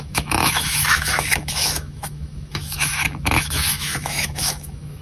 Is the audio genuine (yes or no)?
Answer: no